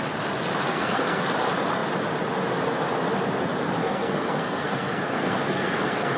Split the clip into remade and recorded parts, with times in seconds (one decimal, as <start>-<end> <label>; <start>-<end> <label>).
0.0-0.7 recorded; 0.7-1.2 remade; 1.2-3.8 recorded; 3.8-6.2 remade